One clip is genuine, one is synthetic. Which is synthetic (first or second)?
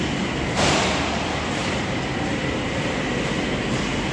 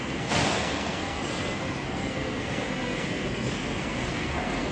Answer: second